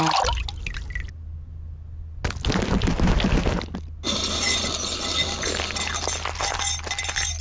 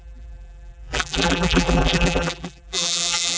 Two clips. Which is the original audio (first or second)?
first